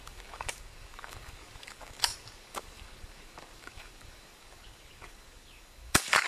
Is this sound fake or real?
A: fake